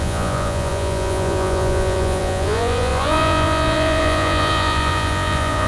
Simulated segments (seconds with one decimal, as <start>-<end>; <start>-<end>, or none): 0.0-5.7